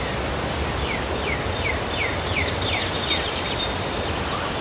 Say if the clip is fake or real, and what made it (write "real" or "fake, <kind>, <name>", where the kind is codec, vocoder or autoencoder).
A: real